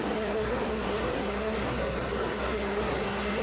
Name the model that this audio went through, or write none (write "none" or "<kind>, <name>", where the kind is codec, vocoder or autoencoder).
codec, SNAC